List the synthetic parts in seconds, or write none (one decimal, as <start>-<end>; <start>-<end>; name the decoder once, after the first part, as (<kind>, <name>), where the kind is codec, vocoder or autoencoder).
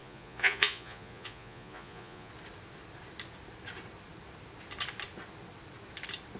0.0-2.3 (vocoder, Vocos)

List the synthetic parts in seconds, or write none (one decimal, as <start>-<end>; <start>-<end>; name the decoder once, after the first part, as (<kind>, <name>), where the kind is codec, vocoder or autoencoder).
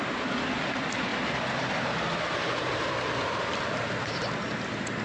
none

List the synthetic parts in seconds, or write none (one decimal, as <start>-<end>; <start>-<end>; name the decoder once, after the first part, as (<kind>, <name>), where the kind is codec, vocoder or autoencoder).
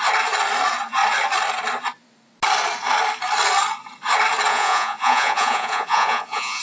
4.5-6.6 (vocoder, Vocos)